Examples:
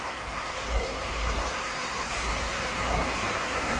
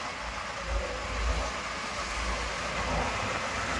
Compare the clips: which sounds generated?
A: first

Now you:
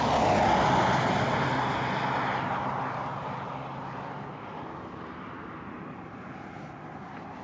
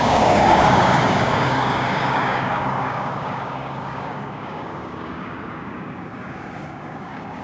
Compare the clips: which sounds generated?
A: second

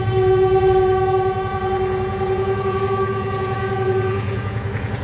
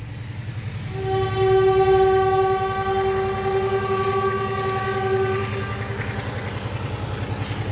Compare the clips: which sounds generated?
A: first